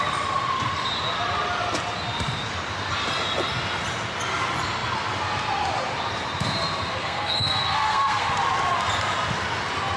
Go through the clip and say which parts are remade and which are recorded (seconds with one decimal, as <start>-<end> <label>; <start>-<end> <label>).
0.0-7.0 recorded; 7.0-8.3 remade; 8.3-10.0 recorded